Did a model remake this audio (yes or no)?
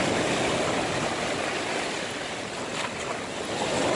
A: no